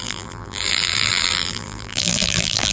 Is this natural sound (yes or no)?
no